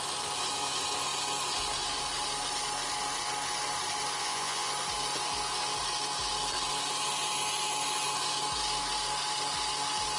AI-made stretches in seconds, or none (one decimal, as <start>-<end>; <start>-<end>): 4.2-4.7